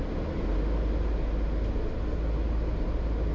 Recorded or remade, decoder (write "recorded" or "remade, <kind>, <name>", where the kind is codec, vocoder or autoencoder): recorded